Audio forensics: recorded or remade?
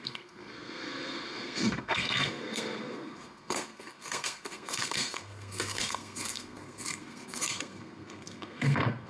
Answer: remade